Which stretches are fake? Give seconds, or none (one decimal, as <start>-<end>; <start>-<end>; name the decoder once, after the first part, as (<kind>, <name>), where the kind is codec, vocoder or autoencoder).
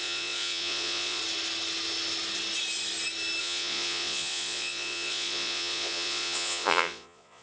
0.0-1.2 (vocoder, Vocos); 3.4-7.4